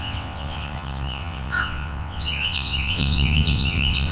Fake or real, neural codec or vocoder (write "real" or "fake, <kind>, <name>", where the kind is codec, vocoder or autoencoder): fake, vocoder, WaveNeXt